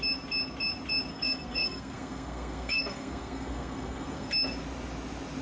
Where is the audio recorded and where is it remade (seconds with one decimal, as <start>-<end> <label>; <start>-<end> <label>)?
0.0-1.1 recorded; 1.1-4.3 remade; 4.3-5.4 recorded